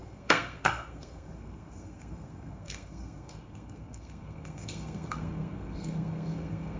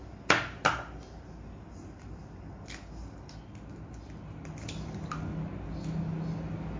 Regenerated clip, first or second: first